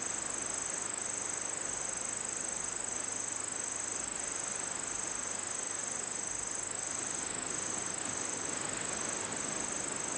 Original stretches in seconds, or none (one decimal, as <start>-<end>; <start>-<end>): 0.0-10.2

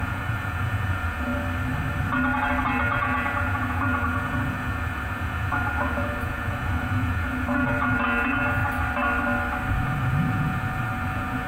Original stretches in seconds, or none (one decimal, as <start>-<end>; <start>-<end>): 1.3-2.8; 8.6-9.7

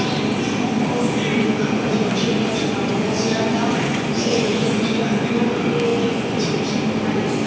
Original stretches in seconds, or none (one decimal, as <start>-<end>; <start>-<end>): 0.0-1.3; 5.4-5.9; 6.4-7.5

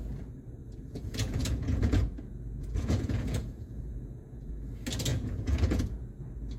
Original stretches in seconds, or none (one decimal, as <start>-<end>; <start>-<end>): 0.0-0.6; 4.5-5.1; 6.1-6.6

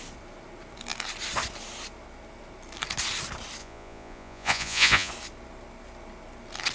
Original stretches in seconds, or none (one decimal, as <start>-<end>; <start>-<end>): 0.0-3.6; 5.1-6.7